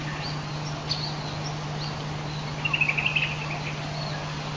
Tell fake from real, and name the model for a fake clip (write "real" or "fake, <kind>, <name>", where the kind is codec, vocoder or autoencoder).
real